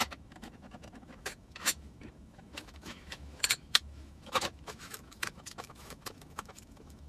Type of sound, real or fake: fake